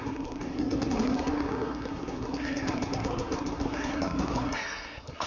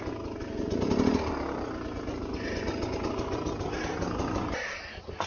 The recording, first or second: second